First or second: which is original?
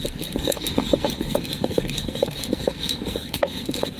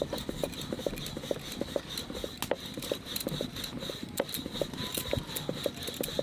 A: second